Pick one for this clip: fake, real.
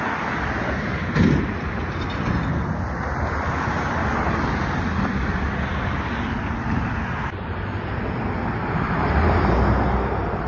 real